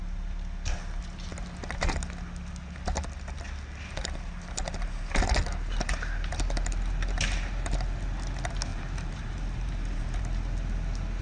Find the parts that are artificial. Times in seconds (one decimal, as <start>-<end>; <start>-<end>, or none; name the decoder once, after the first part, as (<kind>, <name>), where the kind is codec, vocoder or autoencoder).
8.7-10.2 (vocoder, BigVGAN v2)